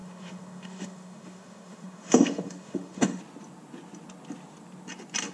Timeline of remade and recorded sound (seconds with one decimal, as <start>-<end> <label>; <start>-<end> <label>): 0.0-3.2 remade; 3.2-5.3 recorded